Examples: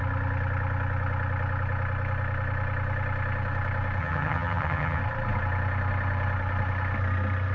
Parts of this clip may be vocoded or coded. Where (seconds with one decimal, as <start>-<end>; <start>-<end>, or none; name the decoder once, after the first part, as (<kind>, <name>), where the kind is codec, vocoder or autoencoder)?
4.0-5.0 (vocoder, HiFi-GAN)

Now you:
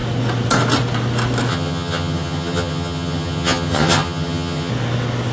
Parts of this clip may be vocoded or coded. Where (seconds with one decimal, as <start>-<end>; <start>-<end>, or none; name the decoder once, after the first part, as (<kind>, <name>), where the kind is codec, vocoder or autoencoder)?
1.5-4.7 (vocoder, HiFi-GAN)

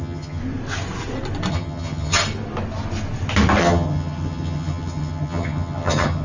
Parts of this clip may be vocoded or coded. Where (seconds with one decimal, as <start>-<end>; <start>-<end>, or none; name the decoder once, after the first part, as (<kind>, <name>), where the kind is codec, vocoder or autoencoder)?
0.0-0.4 (vocoder, HiFi-GAN); 1.5-2.2; 3.6-6.2